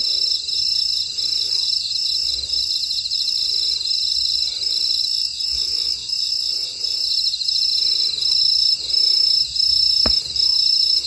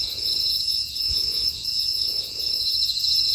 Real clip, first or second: first